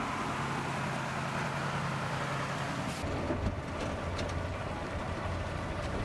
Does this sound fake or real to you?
real